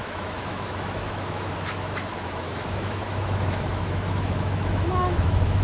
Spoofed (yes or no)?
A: yes